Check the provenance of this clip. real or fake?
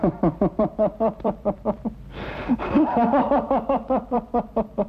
fake